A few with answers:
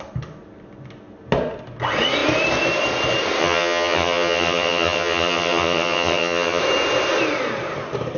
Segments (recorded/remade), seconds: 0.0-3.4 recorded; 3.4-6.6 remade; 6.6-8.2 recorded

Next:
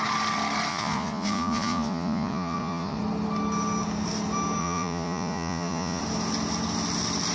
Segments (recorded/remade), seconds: 0.0-0.7 recorded; 0.7-3.0 remade; 3.0-4.6 recorded; 4.6-6.0 remade; 6.0-7.3 recorded